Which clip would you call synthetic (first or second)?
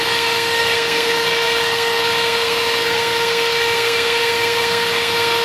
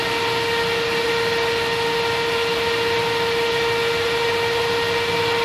first